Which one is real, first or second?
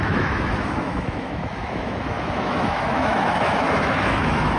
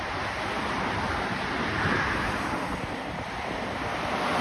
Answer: second